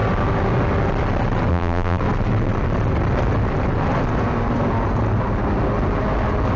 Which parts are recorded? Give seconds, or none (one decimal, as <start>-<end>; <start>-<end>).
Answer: 0.0-1.5; 2.0-6.6

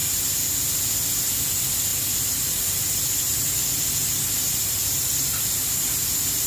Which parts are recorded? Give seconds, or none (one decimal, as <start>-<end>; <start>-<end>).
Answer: 0.0-1.9; 3.6-4.0

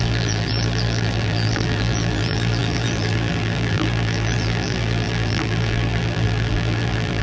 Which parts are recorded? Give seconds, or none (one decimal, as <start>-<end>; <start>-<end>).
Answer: none